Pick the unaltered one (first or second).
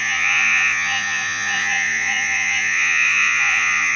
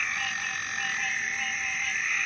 second